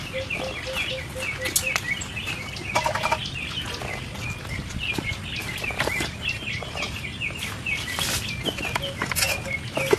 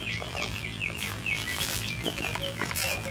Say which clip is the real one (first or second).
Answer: first